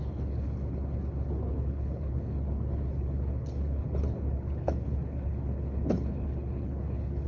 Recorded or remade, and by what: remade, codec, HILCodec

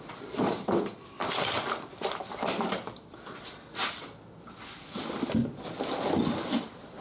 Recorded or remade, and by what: recorded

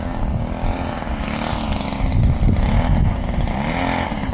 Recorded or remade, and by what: recorded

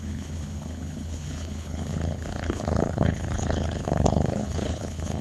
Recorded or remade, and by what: remade, codec, HILCodec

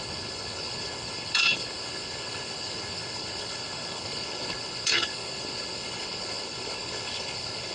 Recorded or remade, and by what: remade, codec, HILCodec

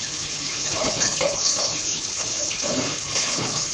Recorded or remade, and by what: remade, codec, HILCodec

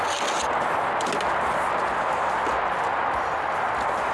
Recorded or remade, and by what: recorded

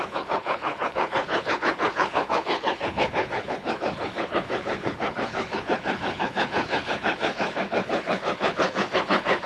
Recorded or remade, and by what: remade, codec, HILCodec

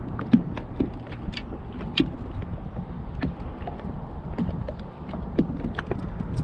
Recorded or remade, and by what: recorded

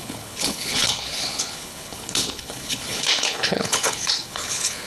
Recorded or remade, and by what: remade, codec, HILCodec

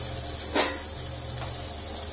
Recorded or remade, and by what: recorded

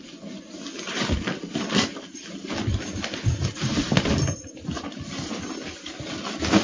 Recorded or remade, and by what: recorded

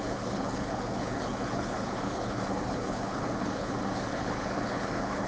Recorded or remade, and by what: remade, codec, HILCodec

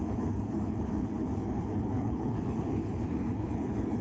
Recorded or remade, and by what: remade, codec, HILCodec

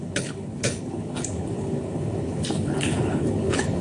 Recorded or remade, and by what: remade, codec, HILCodec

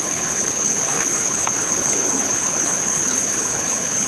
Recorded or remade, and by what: remade, codec, HILCodec